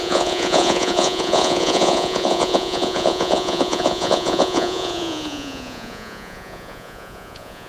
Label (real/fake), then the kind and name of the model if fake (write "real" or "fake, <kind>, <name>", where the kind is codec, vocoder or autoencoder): fake, vocoder, Vocos